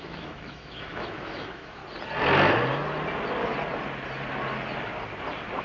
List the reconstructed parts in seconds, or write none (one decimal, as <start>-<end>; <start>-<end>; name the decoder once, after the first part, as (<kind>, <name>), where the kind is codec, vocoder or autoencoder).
0.0-1.8 (autoencoder, DAC-VAE)